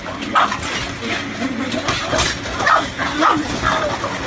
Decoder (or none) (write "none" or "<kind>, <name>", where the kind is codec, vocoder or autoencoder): none